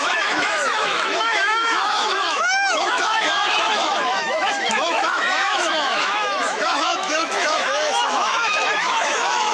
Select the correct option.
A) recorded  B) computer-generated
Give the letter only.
B